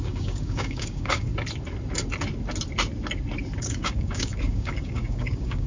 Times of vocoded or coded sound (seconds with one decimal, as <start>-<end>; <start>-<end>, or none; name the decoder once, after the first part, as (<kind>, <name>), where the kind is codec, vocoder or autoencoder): 0.0-1.3 (codec, DAC); 3.6-5.7